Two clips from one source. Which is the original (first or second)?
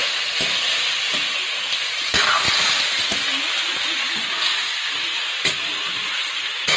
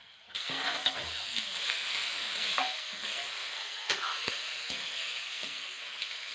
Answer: first